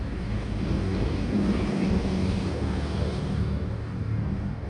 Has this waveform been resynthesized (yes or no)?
yes